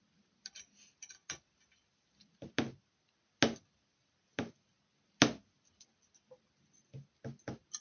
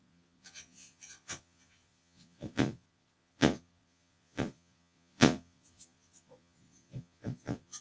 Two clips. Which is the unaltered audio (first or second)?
first